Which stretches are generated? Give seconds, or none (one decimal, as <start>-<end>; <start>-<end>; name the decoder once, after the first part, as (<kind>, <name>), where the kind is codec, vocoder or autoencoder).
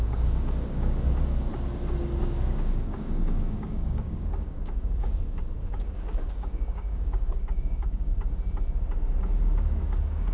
0.0-1.5 (codec, DAC); 2.2-8.1; 9.2-10.3